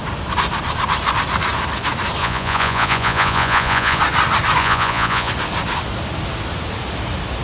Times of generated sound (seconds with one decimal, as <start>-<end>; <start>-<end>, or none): 2.2-4.0; 4.6-5.3